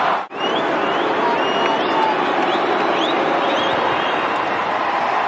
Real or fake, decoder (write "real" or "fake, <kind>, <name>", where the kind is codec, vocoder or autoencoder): real